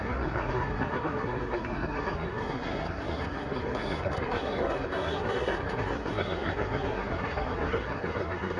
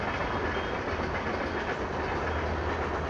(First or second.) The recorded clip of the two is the second